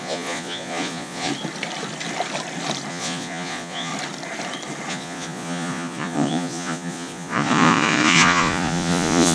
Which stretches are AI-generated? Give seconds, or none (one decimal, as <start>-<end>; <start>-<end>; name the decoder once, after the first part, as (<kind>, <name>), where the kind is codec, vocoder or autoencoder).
0.0-1.3 (vocoder, Vocos); 2.9-3.9; 4.9-9.3